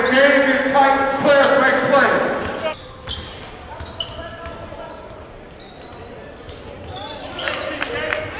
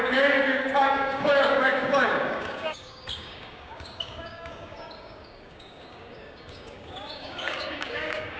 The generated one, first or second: second